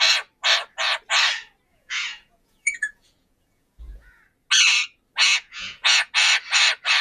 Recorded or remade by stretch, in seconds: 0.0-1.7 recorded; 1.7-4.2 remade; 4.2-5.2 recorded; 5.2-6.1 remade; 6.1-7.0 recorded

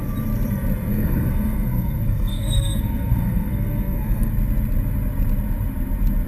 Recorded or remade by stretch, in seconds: 0.0-0.9 recorded; 0.9-4.3 remade; 4.3-6.3 recorded

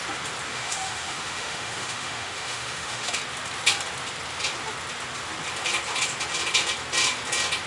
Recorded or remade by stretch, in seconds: 0.0-0.5 recorded; 0.5-3.2 remade; 3.2-7.7 recorded

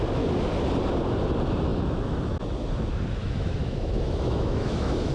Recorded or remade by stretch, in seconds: 0.0-3.2 recorded; 3.2-5.1 remade